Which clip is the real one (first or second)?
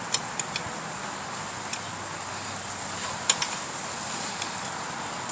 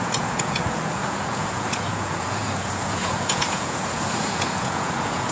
first